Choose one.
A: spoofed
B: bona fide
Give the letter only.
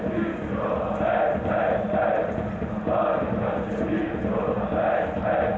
B